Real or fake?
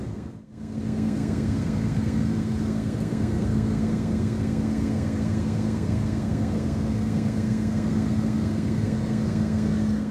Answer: fake